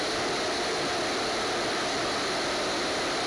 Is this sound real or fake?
real